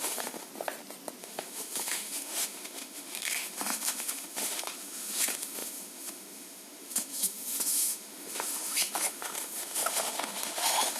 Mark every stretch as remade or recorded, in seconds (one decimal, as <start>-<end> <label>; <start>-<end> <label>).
0.0-0.5 remade; 0.5-1.2 recorded; 1.2-11.0 remade